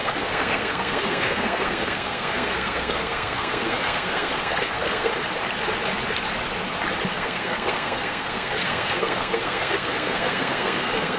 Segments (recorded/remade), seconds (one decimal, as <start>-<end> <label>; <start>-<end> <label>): 0.0-5.1 remade; 5.1-7.1 recorded; 7.1-11.2 remade